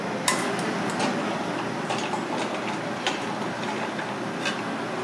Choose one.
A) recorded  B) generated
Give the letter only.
A